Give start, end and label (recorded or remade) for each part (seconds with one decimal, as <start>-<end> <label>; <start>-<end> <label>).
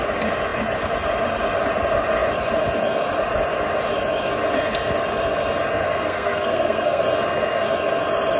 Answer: 0.0-5.8 recorded; 5.8-7.0 remade; 7.0-8.4 recorded